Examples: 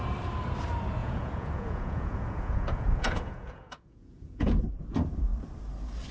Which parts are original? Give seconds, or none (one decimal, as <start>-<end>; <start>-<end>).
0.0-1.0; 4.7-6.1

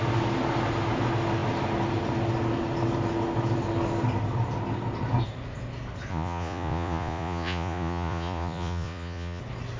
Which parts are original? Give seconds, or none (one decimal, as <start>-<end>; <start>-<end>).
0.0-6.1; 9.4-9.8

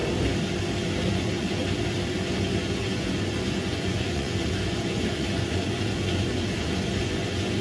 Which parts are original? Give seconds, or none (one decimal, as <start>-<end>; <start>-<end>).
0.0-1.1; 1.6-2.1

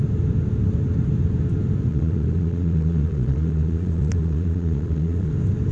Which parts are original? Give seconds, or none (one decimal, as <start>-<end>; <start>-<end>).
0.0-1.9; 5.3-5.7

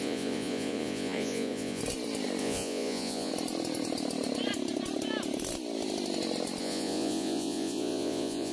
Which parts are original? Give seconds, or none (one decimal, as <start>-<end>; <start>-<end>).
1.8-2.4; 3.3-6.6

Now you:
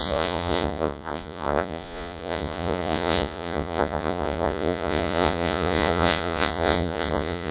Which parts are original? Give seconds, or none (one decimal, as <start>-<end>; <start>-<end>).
none